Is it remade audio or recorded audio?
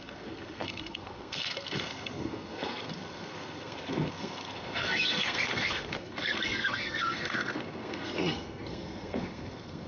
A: remade